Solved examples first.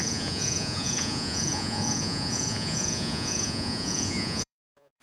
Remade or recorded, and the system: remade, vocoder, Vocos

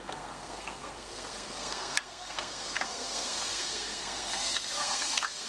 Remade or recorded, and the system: remade, codec, SNAC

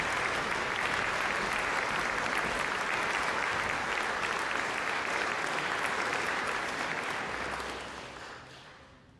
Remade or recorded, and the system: recorded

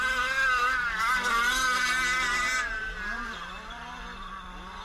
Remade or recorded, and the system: recorded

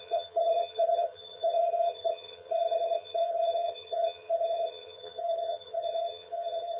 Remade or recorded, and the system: remade, vocoder, HiFi-GAN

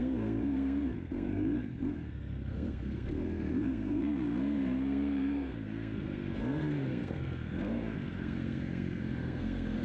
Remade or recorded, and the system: remade, codec, SNAC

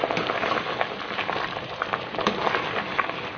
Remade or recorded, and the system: recorded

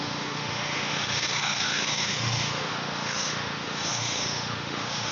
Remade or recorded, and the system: remade, autoencoder, DAC-VAE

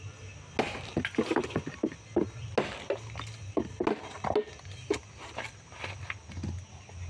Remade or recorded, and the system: recorded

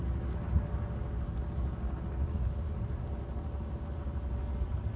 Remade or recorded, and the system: recorded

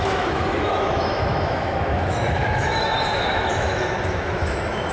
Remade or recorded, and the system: remade, autoencoder, DAC-VAE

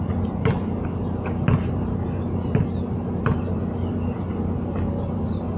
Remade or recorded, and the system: recorded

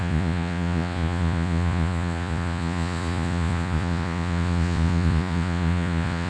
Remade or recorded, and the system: remade, vocoder, Vocos